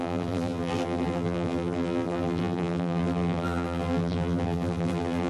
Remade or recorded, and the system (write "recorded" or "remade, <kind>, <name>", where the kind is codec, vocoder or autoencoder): remade, vocoder, BigVGAN v2